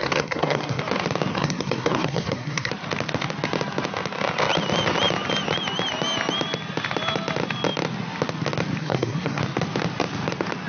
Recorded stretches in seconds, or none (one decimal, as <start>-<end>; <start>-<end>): 0.8-1.3; 2.7-8.8; 9.4-10.7